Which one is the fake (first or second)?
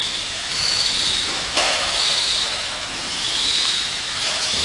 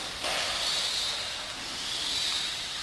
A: first